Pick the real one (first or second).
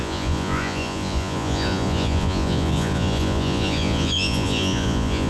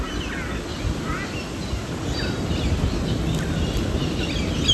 second